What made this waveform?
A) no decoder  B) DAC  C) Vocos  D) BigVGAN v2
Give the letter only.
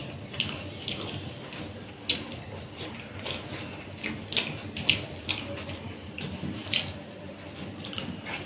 A